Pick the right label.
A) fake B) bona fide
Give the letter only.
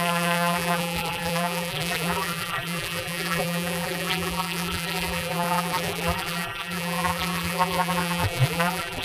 A